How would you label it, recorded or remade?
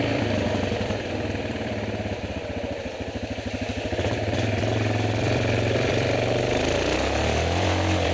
remade